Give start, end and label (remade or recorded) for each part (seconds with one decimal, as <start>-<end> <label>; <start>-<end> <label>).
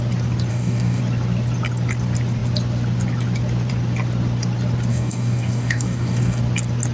0.0-0.5 recorded; 0.5-1.0 remade; 1.0-4.9 recorded; 4.9-6.4 remade; 6.4-6.9 recorded